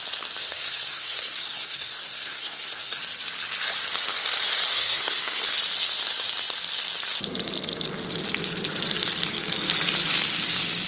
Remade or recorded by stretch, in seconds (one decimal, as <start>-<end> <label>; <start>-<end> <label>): 0.0-0.4 recorded; 0.4-3.0 remade; 3.0-4.7 recorded; 4.7-5.5 remade; 5.5-10.9 recorded